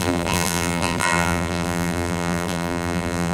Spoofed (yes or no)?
yes